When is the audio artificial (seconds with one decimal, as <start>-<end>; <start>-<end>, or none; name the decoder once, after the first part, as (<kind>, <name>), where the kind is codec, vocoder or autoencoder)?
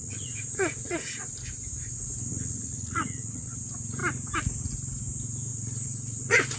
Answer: 0.0-1.2 (vocoder, Vocos); 2.3-3.6; 5.5-6.6